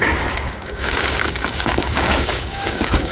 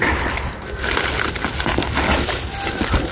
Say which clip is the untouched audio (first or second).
second